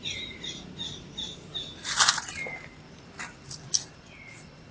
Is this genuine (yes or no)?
yes